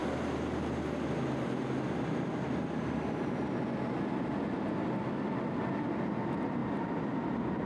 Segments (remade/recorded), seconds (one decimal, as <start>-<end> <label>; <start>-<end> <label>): 0.0-7.7 recorded